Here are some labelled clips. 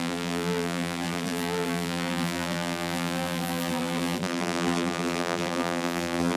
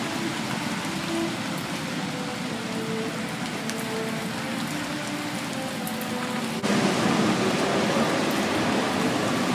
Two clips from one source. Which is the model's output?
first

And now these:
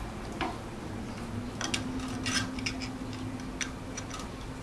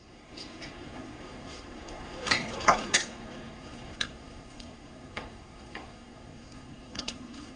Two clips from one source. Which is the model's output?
second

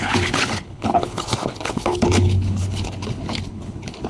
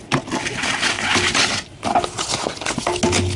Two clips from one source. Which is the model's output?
first